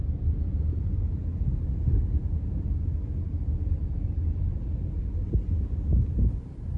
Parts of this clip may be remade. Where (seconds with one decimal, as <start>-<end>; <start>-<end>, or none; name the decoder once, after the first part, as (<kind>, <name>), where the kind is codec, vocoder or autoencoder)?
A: none